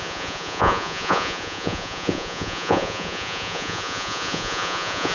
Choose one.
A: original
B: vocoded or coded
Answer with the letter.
B